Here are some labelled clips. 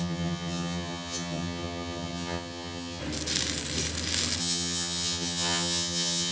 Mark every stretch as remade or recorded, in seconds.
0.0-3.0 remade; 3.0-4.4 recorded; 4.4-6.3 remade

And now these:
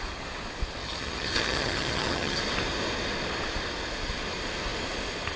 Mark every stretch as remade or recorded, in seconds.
0.0-0.8 recorded; 0.8-2.4 remade; 2.4-5.4 recorded

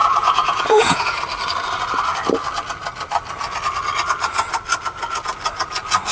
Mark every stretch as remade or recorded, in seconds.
0.0-1.2 remade; 1.2-6.1 recorded

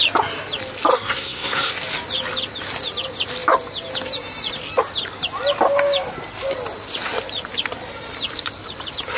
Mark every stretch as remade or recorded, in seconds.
0.0-0.9 recorded; 0.9-1.7 remade; 1.7-9.2 recorded

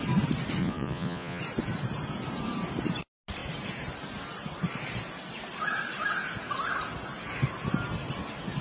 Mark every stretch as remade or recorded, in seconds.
0.0-0.6 recorded; 0.6-1.4 remade; 1.4-8.6 recorded

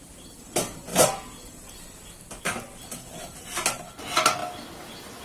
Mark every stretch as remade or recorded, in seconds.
0.0-5.2 recorded